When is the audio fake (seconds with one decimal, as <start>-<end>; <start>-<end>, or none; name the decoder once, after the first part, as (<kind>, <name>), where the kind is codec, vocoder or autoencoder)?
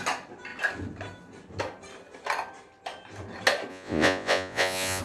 3.7-5.0 (vocoder, Vocos)